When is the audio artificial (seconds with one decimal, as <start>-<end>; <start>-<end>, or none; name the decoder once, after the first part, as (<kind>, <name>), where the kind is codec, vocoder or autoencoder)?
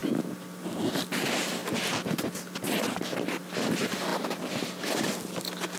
none